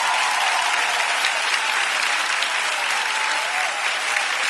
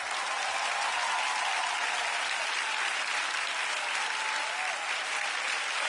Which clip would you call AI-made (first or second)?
first